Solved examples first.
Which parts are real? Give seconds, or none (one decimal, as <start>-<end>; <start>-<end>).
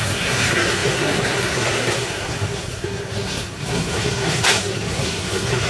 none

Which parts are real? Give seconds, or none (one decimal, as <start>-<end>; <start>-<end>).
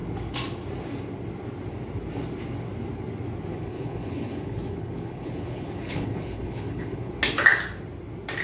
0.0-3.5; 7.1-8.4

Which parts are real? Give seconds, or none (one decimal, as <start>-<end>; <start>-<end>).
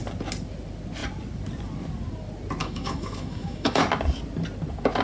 0.0-2.6; 3.8-5.0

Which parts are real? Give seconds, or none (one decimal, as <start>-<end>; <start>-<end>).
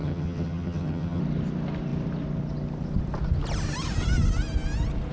1.2-5.1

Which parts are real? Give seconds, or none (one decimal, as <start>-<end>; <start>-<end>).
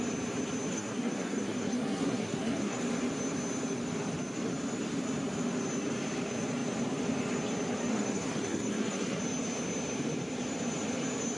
0.0-0.7; 2.8-7.9; 9.2-11.4